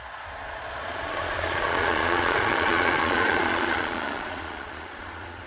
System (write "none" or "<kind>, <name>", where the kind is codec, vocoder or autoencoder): vocoder, Vocos